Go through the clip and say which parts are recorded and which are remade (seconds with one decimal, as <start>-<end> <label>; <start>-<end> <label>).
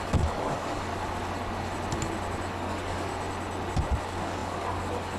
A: 0.0-0.9 remade; 0.9-2.5 recorded; 2.5-3.1 remade; 3.1-4.0 recorded; 4.0-5.2 remade